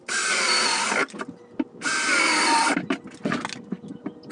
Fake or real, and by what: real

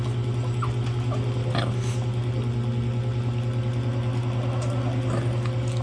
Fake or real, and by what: real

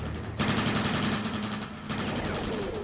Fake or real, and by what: real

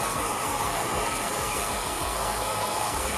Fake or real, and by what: fake, codec, SNAC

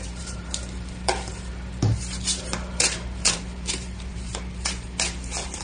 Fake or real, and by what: fake, vocoder, BigVGAN v2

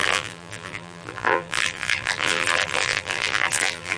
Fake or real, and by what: fake, vocoder, BigVGAN v2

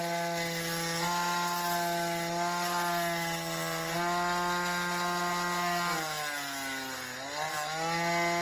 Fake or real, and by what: real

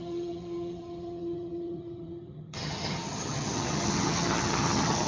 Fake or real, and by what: fake, vocoder, HiFi-GAN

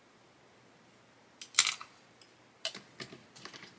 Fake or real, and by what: real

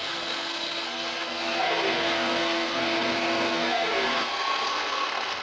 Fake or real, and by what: fake, codec, SNAC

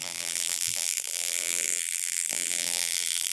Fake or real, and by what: fake, vocoder, BigVGAN v2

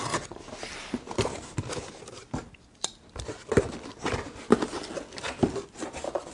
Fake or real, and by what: real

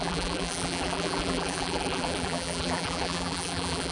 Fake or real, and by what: fake, vocoder, BigVGAN v2